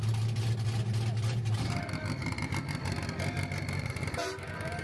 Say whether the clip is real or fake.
real